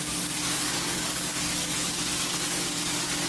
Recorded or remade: remade